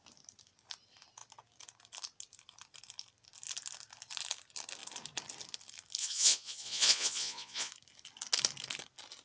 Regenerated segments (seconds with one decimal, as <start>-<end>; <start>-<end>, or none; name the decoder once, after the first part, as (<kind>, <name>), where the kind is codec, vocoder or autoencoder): 6.0-7.7 (vocoder, Vocos)